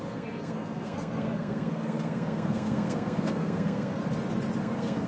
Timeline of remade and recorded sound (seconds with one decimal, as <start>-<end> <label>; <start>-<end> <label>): 0.0-4.0 remade; 4.0-4.6 recorded; 4.6-5.1 remade